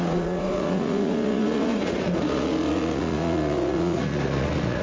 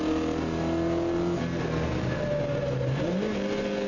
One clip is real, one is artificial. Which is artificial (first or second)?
first